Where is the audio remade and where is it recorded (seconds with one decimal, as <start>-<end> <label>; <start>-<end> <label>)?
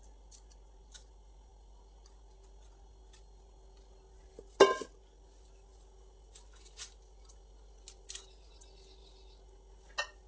0.0-10.3 recorded